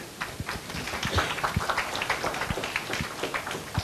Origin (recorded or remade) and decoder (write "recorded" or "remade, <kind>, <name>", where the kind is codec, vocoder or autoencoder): recorded